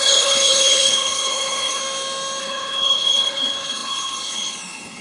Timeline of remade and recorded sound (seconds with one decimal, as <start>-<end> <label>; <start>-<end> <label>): 0.0-1.8 remade; 1.8-2.4 recorded; 2.4-5.0 remade